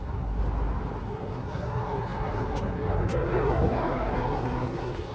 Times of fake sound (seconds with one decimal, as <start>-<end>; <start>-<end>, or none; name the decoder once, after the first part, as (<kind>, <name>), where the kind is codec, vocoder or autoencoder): 0.0-0.4 (codec, SNAC); 1.0-5.1